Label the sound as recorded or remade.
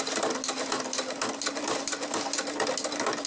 recorded